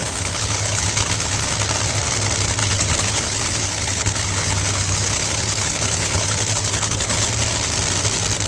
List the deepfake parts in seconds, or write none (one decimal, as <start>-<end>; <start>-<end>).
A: 0.0-1.5; 2.6-7.3